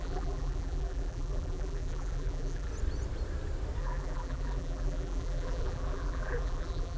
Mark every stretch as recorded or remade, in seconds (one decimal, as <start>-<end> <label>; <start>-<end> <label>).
0.0-2.7 remade; 2.7-3.8 recorded; 3.8-7.0 remade